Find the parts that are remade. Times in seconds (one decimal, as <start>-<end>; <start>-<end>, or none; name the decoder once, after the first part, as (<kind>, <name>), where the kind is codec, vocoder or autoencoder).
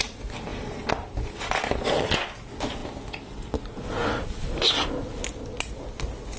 none